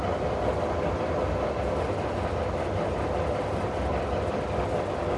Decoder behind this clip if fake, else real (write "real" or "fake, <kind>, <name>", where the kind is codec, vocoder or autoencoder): real